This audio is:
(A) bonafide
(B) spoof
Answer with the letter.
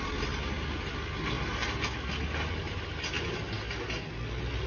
A